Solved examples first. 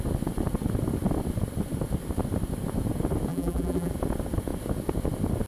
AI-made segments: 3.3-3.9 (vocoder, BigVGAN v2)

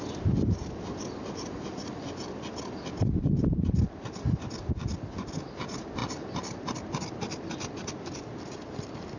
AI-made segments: none

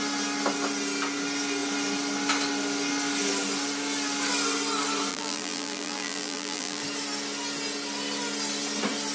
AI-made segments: 5.1-6.8 (vocoder, BigVGAN v2)